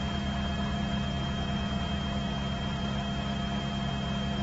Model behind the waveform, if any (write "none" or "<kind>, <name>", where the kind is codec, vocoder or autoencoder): none